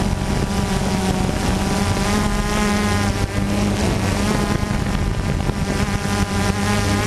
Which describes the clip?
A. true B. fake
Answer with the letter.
A